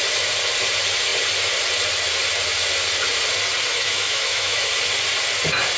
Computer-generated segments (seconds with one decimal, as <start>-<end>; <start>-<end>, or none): 3.7-4.7